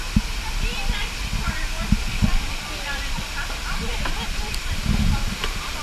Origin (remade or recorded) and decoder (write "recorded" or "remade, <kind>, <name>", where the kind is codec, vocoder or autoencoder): remade, vocoder, BigVGAN v2